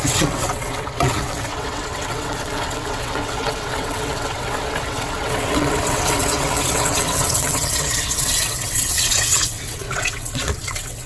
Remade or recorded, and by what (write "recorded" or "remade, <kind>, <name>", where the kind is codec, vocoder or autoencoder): remade, vocoder, WaveNeXt